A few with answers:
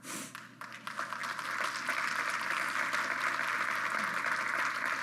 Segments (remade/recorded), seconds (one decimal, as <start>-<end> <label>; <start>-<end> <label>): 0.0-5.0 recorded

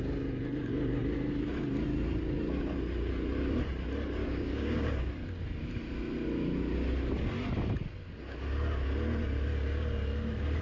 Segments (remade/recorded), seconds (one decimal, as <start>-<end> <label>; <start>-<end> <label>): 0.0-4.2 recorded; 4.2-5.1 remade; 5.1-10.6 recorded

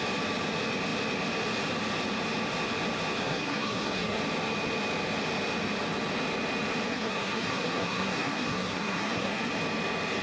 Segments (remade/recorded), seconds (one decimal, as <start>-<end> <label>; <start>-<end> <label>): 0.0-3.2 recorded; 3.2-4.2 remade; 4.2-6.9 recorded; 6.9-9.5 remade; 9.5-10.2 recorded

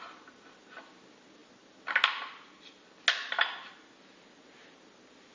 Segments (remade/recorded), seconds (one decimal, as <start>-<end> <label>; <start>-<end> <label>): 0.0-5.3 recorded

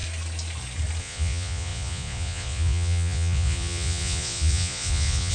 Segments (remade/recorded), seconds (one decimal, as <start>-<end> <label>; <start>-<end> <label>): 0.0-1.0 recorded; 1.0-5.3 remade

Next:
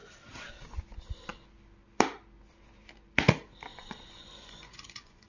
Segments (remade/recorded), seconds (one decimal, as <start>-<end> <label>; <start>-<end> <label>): 0.0-3.7 recorded; 3.7-5.3 remade